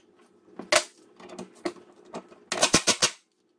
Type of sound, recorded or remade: recorded